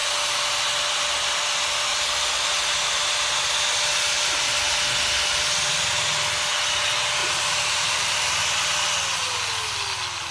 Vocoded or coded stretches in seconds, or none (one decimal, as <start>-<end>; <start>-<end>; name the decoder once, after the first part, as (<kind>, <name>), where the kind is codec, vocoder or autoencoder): 1.9-2.4 (vocoder, BigVGAN v2); 7.2-8.4